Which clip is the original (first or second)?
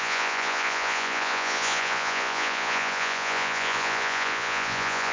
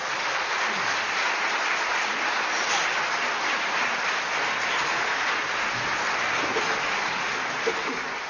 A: second